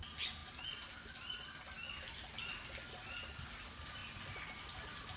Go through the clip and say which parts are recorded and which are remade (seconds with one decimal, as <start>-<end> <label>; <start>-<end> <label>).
0.0-5.2 recorded